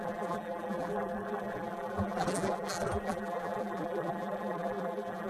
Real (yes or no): no